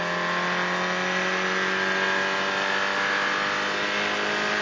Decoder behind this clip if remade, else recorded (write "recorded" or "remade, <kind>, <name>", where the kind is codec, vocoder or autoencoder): recorded